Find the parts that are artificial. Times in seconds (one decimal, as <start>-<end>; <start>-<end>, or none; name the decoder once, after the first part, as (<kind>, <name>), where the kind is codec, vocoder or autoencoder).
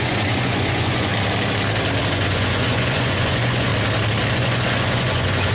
0.0-1.1 (vocoder, Vocos); 2.1-3.7; 4.3-5.5